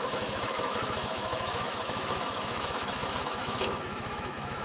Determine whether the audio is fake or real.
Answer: fake